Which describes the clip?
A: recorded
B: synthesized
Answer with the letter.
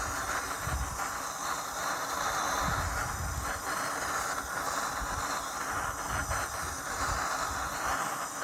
A